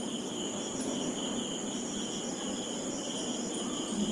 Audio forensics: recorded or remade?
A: recorded